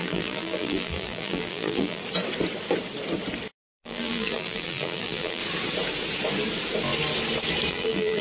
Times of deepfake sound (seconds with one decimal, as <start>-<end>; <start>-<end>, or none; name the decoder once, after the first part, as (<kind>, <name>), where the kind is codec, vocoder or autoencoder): 0.0-2.0 (vocoder, BigVGAN v2); 3.5-5.4; 7.7-8.2